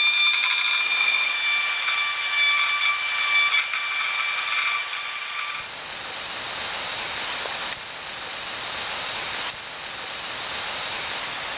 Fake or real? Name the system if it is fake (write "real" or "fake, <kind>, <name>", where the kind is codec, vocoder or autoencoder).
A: real